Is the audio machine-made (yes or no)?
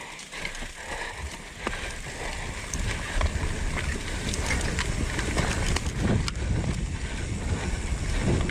no